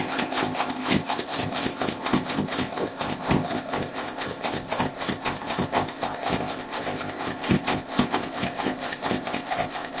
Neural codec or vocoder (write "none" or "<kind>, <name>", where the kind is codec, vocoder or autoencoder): codec, ZipCodec